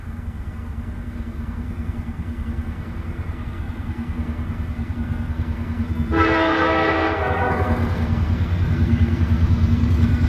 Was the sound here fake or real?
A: fake